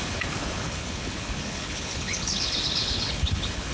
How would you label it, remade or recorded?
remade